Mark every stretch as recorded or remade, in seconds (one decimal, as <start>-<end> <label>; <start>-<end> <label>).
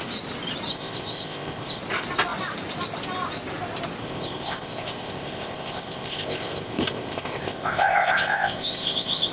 0.0-0.7 recorded; 0.7-1.8 remade; 1.8-4.0 recorded; 4.0-9.3 remade